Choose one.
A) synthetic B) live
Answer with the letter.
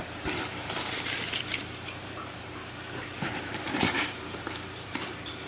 A